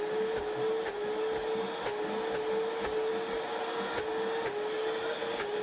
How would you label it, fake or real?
real